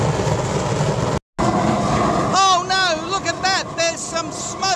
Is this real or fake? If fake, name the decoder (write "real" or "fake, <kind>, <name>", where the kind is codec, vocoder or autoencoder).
real